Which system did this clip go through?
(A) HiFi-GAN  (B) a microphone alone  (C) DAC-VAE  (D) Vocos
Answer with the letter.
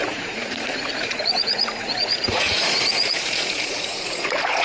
D